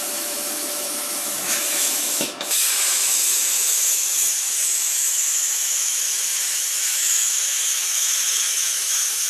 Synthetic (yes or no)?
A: yes